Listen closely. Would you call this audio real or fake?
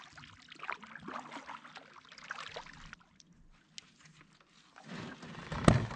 real